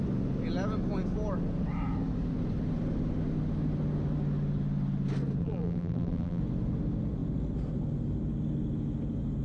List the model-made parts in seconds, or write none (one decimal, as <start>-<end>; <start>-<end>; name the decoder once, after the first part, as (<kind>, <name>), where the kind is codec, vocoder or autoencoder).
5.4-6.4 (vocoder, BigVGAN v2)